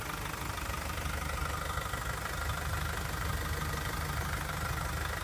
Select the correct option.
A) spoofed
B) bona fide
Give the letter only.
B